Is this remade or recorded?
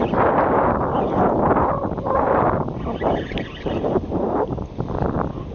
recorded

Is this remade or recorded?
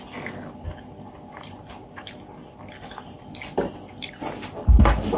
recorded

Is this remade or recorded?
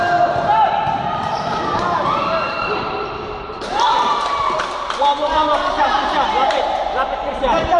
remade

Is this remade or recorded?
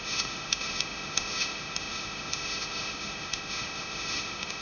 remade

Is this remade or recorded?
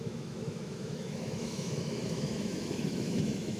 remade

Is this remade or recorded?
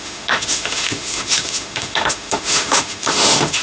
remade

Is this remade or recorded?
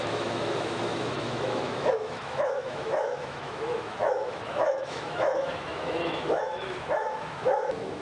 remade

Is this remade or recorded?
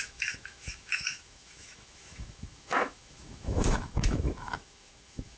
remade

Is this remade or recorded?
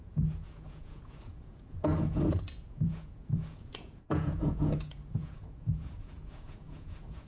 remade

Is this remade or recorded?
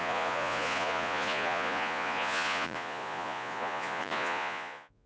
remade